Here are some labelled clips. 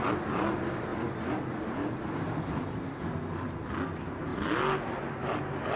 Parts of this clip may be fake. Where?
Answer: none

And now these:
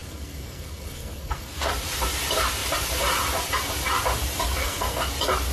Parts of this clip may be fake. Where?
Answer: 0.0-1.7 (codec, SNAC); 4.6-5.1

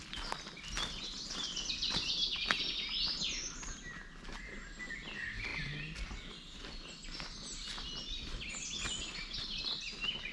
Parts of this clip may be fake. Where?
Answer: none

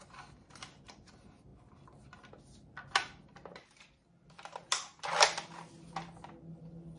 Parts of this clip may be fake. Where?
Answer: none

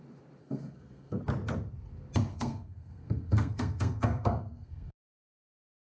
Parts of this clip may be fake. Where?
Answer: 0.4-1.2 (codec, SNAC); 2.3-5.1

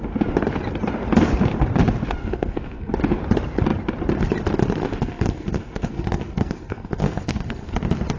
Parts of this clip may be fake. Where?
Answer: 2.2-2.9 (codec, SNAC); 4.8-7.7

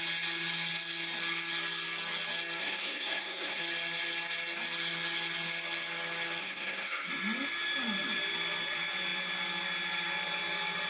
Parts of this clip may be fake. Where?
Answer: 2.6-3.6 (codec, SNAC); 6.4-7.1

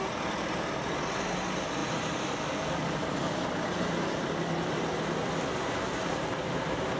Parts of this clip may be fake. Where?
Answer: none